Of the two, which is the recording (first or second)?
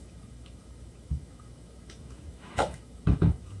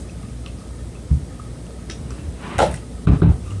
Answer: second